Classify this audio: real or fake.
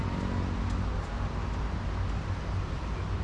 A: real